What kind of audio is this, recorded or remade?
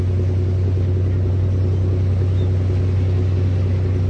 recorded